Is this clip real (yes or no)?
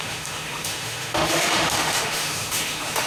no